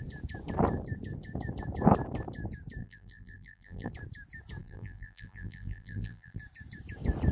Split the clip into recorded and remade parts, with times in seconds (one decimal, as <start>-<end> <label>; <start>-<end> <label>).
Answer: 0.0-2.8 recorded; 2.8-3.9 remade; 3.9-4.6 recorded; 4.6-6.4 remade; 6.4-7.3 recorded